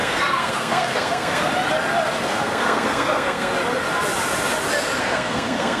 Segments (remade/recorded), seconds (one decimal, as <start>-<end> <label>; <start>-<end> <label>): 0.0-1.5 remade; 1.5-2.2 recorded; 2.2-3.5 remade; 3.5-5.0 recorded; 5.0-5.8 remade